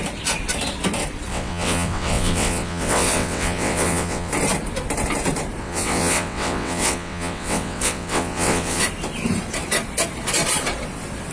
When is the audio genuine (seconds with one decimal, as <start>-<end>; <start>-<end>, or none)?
0.0-1.3; 4.3-5.6; 8.8-11.3